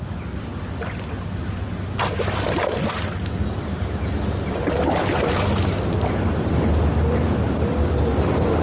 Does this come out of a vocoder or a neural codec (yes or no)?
no